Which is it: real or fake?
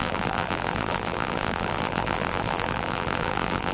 fake